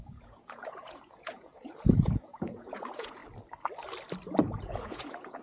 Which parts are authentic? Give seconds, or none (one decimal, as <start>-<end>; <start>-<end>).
3.2-4.4